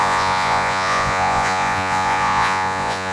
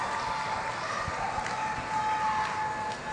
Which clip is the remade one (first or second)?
first